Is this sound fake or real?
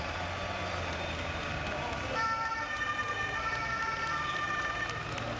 real